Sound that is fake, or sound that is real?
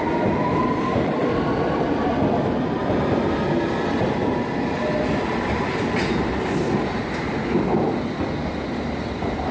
real